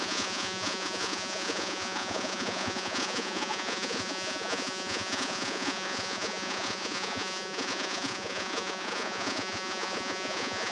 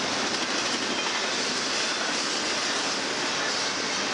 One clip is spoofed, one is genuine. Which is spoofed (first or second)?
first